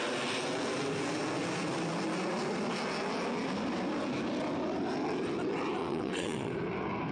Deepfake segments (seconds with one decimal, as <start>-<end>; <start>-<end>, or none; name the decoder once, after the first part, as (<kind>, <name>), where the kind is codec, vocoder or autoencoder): 5.8-6.5 (vocoder, WaveNeXt)